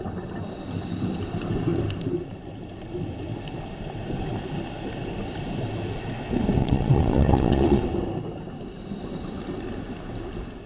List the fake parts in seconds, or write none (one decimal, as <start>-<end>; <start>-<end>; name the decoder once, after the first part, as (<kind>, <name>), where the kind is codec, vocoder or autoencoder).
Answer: 6.6-7.8 (vocoder, Vocos)